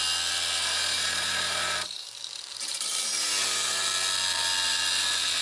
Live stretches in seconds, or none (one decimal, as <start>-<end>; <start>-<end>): 0.0-0.6; 3.8-5.4